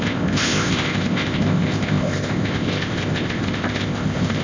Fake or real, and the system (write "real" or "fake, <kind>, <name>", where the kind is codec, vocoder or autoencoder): fake, codec, ZipCodec